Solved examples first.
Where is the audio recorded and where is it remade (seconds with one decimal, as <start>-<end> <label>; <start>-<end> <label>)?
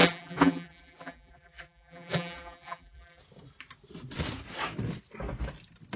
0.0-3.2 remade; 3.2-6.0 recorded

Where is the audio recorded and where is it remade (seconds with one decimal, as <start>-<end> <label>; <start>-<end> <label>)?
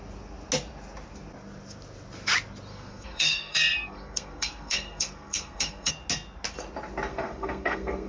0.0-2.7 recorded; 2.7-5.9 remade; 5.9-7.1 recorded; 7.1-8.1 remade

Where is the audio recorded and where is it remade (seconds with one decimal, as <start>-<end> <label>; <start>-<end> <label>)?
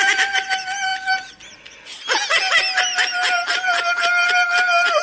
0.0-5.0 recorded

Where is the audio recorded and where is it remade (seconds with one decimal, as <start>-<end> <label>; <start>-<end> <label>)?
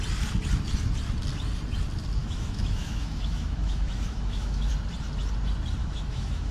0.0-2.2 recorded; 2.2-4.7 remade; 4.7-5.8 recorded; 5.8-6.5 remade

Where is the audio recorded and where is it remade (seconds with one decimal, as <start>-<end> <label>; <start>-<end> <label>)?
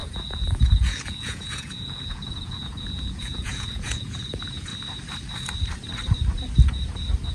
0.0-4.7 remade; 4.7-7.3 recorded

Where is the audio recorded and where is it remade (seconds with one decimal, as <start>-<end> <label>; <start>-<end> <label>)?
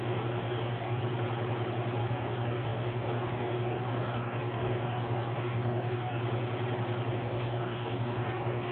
0.0-1.0 remade; 1.0-2.0 recorded; 2.0-6.2 remade; 6.2-7.1 recorded; 7.1-8.7 remade